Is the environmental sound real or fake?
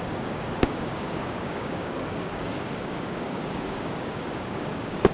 fake